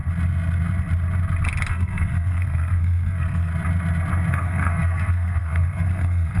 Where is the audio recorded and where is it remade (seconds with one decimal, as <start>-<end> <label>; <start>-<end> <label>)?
0.0-1.7 recorded; 1.7-3.5 remade; 3.5-4.3 recorded; 4.3-6.4 remade